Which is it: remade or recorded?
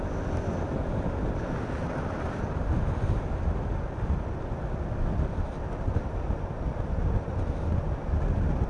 recorded